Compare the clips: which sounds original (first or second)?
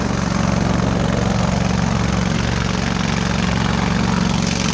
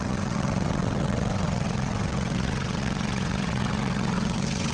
first